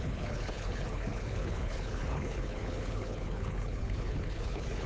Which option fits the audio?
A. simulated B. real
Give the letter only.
A